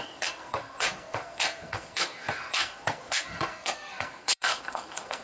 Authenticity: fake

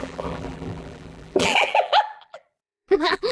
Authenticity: fake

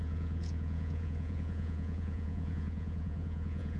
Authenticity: fake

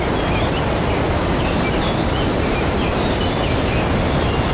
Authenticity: real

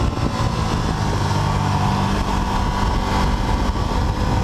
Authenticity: real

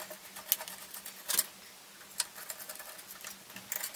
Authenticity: real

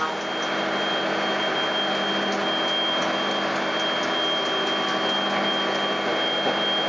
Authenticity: real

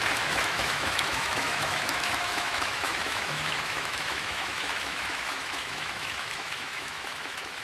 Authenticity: fake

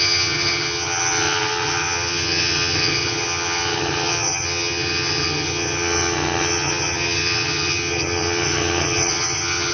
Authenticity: fake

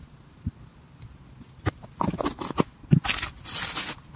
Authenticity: real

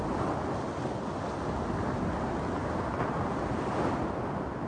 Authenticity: real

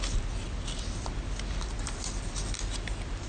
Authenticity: real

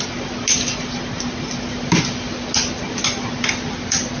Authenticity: real